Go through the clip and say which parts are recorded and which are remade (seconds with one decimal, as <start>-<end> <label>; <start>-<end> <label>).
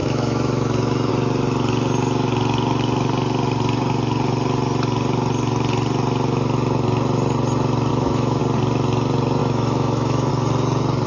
0.0-1.1 remade; 1.1-7.9 recorded; 7.9-8.4 remade; 8.4-9.4 recorded; 9.4-10.3 remade; 10.3-11.1 recorded